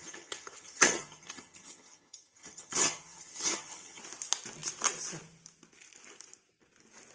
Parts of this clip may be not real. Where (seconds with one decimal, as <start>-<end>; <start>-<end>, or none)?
0.0-4.0